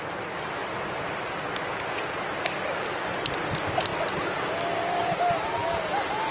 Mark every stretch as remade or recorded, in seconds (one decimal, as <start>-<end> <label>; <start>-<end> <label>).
0.0-6.3 recorded

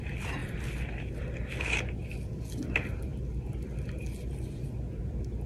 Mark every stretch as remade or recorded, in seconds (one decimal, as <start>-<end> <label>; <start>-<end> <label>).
0.0-5.5 recorded

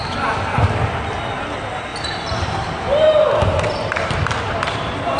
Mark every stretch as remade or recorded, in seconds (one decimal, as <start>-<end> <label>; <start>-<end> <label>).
0.0-1.9 recorded; 1.9-5.2 remade

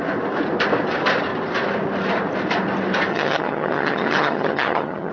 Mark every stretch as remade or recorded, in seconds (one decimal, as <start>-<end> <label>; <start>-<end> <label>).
0.0-3.1 recorded; 3.1-5.1 remade

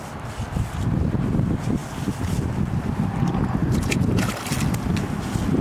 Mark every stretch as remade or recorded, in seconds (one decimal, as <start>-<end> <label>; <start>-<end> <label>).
0.0-3.6 recorded; 3.6-4.3 remade; 4.3-5.6 recorded

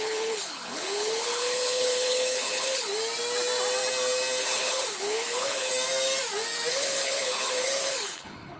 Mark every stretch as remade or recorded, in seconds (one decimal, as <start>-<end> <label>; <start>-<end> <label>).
0.0-2.9 remade; 2.9-4.4 recorded; 4.4-5.7 remade; 5.7-6.7 recorded; 6.7-8.6 remade

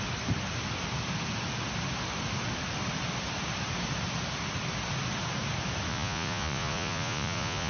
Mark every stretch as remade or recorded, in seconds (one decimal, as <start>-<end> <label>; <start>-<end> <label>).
0.0-5.9 recorded; 5.9-7.7 remade